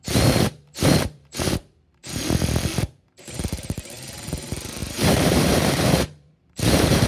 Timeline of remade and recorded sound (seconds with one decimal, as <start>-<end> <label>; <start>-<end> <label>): 0.0-2.0 remade; 2.0-2.8 recorded; 2.8-7.1 remade